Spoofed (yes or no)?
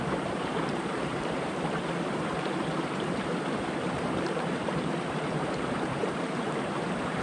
yes